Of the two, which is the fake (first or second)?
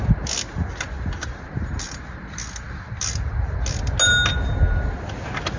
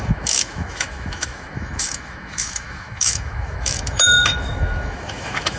second